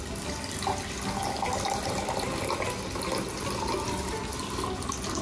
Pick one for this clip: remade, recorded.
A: recorded